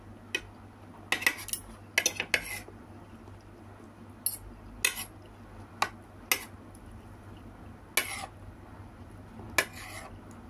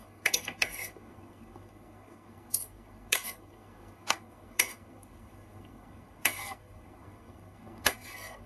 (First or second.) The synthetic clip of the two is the second